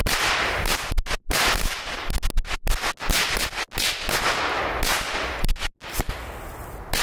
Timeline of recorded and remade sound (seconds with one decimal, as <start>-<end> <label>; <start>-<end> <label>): 0.0-7.0 recorded